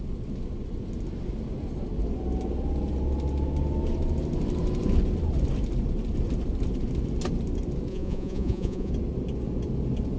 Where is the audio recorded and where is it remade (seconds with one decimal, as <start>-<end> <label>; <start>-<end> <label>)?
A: 0.0-7.9 recorded; 7.9-8.9 remade; 8.9-10.2 recorded

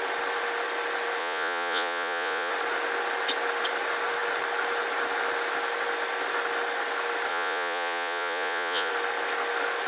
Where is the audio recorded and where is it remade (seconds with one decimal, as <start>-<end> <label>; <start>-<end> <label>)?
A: 0.0-1.2 recorded; 1.2-2.5 remade; 2.5-7.3 recorded; 7.3-8.9 remade; 8.9-9.9 recorded

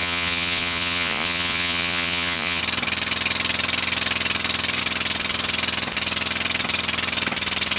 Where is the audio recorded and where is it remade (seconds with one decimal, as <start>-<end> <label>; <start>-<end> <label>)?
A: 0.0-2.6 remade; 2.6-7.8 recorded